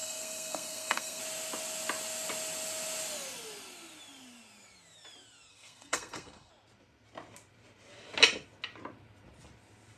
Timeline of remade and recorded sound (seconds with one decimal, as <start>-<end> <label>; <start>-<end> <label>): 0.0-1.2 remade; 1.2-5.5 recorded; 5.5-6.5 remade; 6.5-10.0 recorded